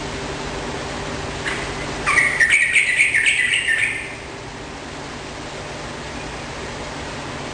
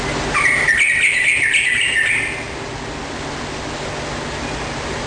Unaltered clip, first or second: second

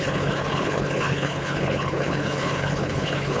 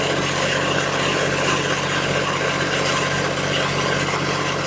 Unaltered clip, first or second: second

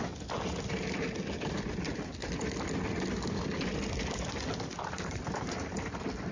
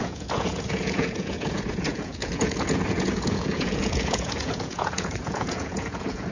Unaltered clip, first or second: first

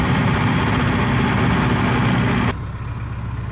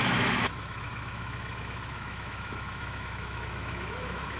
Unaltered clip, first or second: first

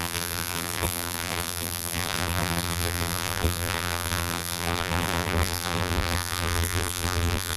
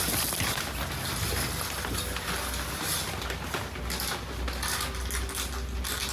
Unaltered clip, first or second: second